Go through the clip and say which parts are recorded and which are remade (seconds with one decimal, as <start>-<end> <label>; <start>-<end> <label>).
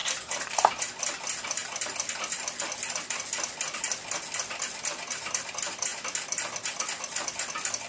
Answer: 0.0-0.9 remade; 0.9-7.9 recorded